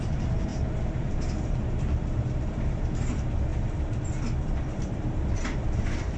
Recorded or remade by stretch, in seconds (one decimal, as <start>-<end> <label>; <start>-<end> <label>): 0.0-3.5 remade; 3.5-4.7 recorded; 4.7-6.2 remade